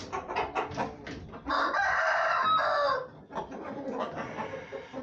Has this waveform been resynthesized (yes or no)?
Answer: no